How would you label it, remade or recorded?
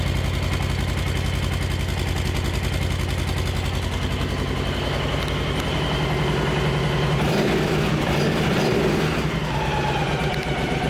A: recorded